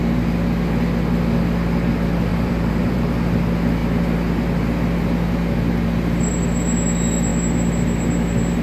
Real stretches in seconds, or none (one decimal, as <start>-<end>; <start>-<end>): 0.0-2.3; 3.0-8.6